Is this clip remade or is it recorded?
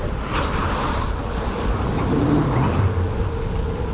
recorded